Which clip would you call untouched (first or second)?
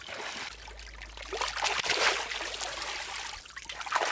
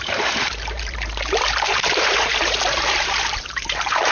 first